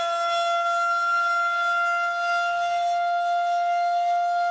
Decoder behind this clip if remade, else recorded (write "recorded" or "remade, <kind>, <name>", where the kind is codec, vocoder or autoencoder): recorded